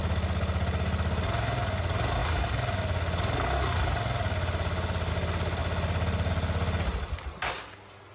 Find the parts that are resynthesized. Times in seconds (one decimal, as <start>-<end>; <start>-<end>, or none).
none